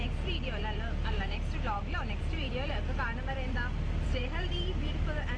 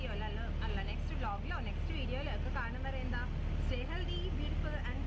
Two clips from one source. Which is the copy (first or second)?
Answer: first